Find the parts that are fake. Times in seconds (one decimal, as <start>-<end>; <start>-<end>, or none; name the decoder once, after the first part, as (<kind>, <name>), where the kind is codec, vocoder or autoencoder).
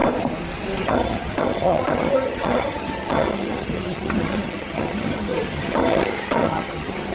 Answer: 0.8-7.1 (vocoder, HiFi-GAN)